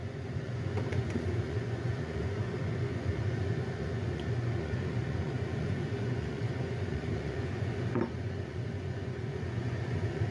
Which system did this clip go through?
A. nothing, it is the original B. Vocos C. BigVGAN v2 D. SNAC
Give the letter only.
B